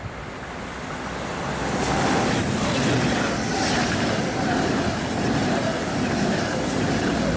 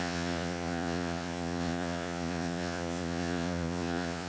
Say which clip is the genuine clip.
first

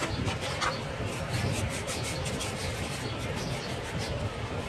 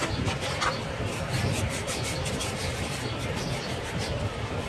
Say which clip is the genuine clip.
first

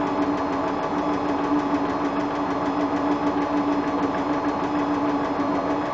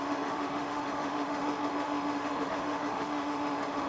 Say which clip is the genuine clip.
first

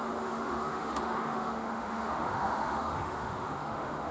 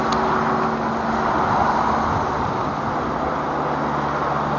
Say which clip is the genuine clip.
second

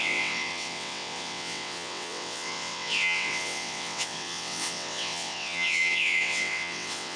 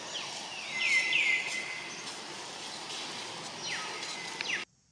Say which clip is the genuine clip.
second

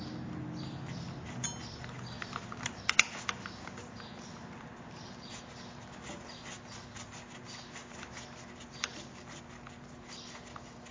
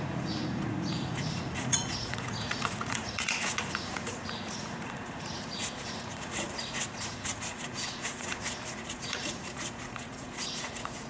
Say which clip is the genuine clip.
first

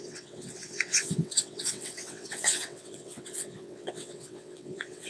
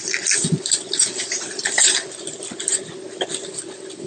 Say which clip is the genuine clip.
second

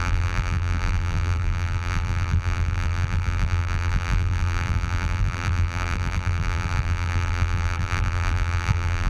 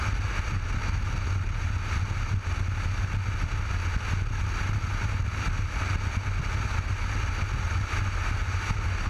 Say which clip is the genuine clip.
second